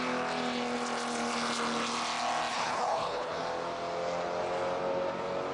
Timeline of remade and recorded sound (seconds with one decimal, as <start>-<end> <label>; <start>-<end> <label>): 0.0-2.5 recorded; 2.5-3.4 remade; 3.4-5.5 recorded